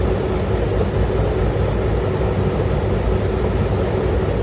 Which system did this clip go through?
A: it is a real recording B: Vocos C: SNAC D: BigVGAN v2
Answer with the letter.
A